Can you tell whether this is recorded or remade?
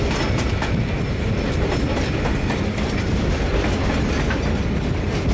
recorded